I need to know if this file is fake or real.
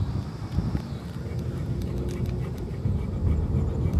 real